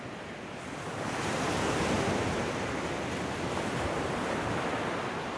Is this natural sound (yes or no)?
yes